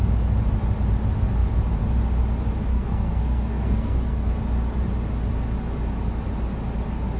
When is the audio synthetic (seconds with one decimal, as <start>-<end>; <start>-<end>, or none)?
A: 2.7-4.3